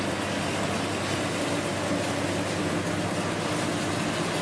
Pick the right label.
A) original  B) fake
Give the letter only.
A